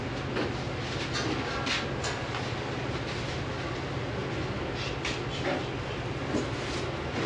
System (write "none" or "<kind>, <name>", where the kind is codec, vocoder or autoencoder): none